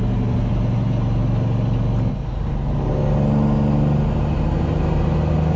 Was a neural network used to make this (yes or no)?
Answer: no